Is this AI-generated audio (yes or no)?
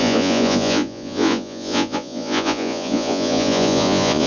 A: yes